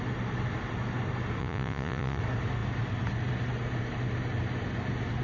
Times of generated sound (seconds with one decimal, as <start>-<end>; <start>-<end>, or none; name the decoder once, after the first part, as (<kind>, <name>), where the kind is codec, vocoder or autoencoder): 1.4-2.2 (vocoder, Vocos)